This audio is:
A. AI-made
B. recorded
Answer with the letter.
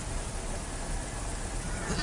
B